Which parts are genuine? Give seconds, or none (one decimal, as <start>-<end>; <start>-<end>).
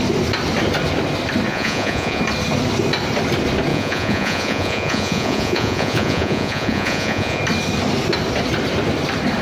0.0-1.5; 2.2-3.7; 7.4-9.4